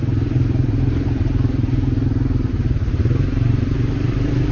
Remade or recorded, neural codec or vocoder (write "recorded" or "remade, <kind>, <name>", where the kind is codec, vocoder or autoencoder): remade, vocoder, BigVGAN v2